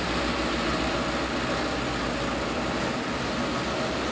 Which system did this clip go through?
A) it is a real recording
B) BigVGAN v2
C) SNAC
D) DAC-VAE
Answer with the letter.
A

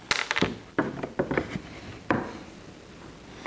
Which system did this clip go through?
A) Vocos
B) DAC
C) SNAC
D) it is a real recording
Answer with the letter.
D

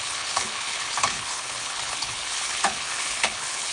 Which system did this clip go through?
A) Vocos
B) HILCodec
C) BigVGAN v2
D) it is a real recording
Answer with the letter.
B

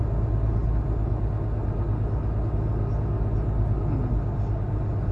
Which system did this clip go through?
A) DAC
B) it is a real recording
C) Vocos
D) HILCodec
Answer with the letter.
B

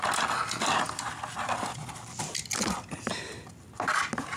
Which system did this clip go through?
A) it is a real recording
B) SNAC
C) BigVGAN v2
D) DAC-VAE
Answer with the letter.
A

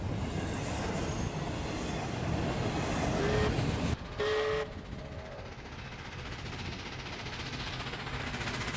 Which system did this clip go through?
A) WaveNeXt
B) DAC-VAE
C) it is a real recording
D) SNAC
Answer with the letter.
C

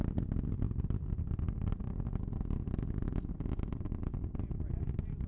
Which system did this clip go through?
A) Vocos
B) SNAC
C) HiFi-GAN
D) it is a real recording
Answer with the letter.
D